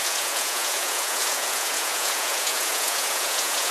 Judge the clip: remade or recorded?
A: remade